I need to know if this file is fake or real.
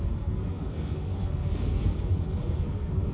fake